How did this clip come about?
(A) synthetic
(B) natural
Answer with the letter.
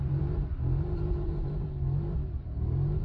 A